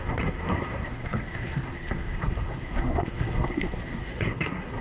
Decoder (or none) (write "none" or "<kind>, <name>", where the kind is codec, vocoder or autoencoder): codec, SNAC